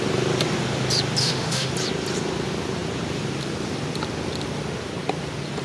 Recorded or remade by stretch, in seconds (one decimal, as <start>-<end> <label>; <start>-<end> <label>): 0.0-1.2 recorded; 1.2-1.7 remade; 1.7-5.6 recorded

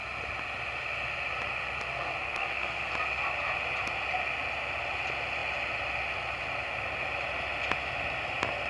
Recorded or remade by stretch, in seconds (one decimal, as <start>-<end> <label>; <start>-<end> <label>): 0.0-2.2 recorded; 2.2-2.9 remade; 2.9-8.7 recorded

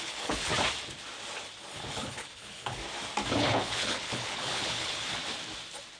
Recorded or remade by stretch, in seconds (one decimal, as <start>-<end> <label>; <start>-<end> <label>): 0.0-0.5 remade; 0.5-1.7 recorded; 1.7-2.8 remade; 2.8-3.3 recorded; 3.3-5.2 remade; 5.2-6.0 recorded